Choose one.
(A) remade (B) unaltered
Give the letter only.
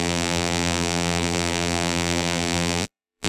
A